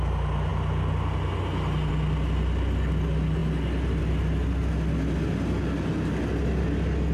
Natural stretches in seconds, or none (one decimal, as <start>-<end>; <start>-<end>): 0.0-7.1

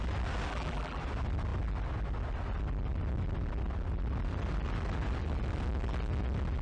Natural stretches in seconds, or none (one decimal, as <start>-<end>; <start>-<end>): 0.0-0.5; 1.0-6.6

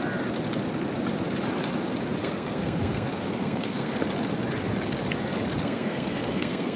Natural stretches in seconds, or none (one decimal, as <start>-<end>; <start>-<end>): 0.0-2.2; 3.9-5.6

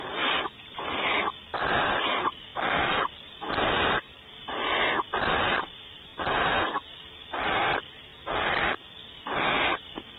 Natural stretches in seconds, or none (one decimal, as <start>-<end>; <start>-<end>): 2.5-5.6; 6.1-7.4; 8.1-9.7

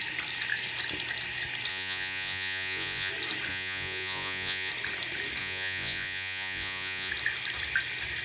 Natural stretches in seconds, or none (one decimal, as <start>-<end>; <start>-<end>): 0.0-1.7; 3.1-3.5; 4.7-5.4; 7.1-8.2

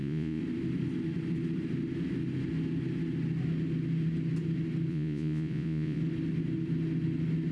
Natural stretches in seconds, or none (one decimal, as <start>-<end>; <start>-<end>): 0.4-4.9; 6.0-7.5

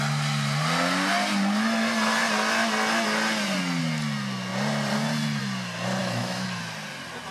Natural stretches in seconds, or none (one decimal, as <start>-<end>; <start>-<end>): 0.0-6.0; 6.6-7.3